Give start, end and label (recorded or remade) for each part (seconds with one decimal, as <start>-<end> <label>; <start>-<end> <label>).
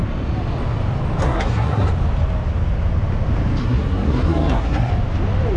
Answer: 0.0-1.2 recorded; 1.2-1.9 remade; 1.9-3.6 recorded; 3.6-4.9 remade; 4.9-5.6 recorded